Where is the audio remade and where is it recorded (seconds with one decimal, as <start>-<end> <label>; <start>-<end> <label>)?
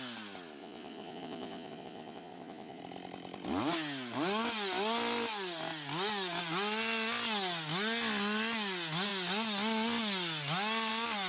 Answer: 0.0-0.6 recorded; 0.6-2.8 remade; 2.8-11.3 recorded